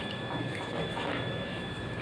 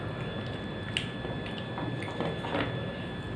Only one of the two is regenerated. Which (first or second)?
first